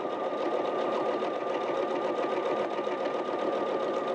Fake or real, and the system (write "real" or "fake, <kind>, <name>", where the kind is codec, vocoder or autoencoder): real